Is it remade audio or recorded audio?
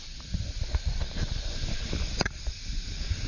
recorded